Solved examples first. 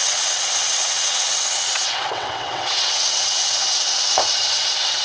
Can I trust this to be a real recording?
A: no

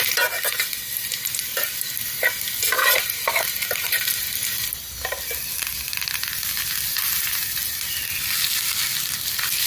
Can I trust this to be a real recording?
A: yes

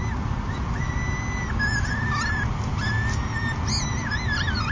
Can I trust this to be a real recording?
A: yes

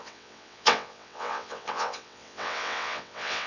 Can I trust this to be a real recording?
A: no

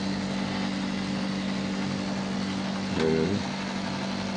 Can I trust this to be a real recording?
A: yes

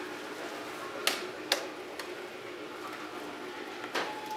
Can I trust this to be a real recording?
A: yes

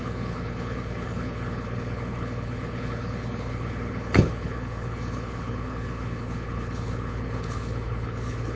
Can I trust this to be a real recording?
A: no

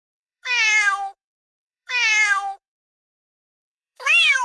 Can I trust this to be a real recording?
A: no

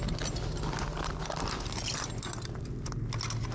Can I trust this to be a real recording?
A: yes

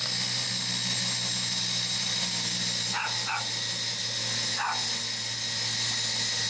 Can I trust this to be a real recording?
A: yes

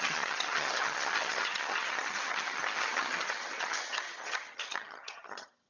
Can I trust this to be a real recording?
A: no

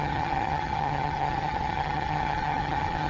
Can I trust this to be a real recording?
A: no